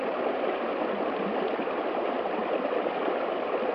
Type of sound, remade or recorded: recorded